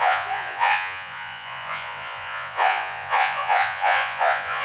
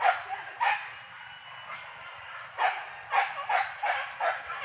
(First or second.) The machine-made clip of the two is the first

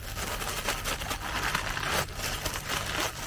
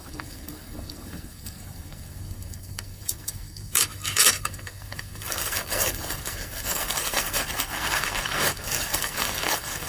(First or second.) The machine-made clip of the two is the second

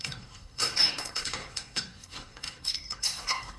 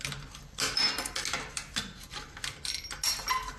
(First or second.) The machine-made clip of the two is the first